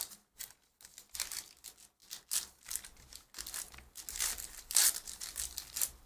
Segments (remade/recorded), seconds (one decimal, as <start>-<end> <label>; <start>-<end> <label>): 0.0-6.1 recorded

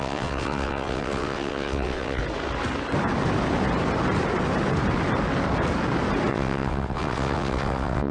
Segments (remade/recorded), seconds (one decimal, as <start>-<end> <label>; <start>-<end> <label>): 0.0-2.2 remade; 2.2-6.3 recorded; 6.3-8.1 remade